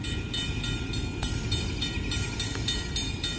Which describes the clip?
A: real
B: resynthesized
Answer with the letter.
A